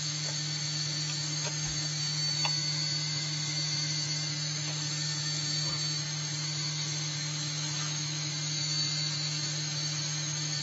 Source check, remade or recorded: remade